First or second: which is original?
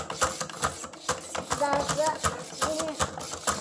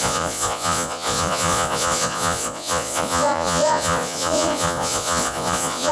first